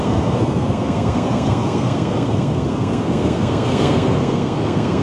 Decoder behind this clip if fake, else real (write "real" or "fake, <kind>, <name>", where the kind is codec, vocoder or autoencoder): fake, codec, SNAC